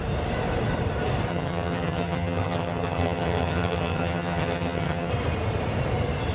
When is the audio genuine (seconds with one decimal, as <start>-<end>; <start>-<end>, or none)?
0.0-1.3; 5.1-6.3